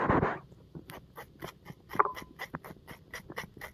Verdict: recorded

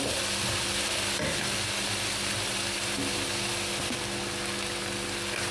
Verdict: recorded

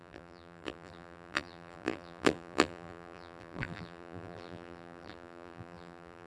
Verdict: remade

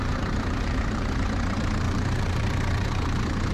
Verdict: remade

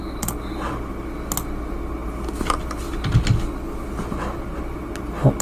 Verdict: recorded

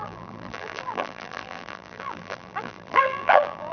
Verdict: remade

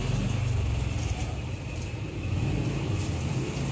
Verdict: recorded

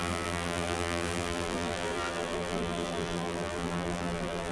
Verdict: remade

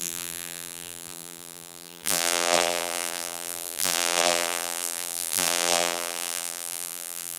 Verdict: remade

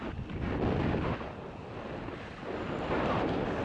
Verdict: recorded